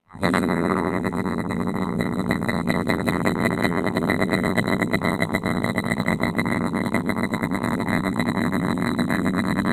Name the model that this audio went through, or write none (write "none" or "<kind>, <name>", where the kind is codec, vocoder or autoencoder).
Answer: vocoder, BigVGAN v2